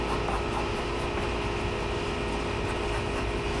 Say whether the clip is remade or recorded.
recorded